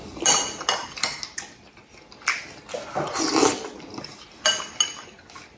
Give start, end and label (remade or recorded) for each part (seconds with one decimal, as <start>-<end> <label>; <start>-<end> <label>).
0.0-5.6 recorded